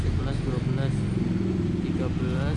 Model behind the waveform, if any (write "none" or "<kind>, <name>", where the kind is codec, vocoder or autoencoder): none